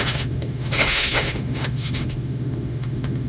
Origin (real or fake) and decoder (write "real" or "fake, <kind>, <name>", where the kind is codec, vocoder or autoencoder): fake, autoencoder, DAC-VAE